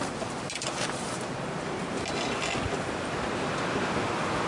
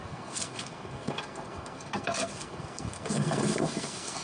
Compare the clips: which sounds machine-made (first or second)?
second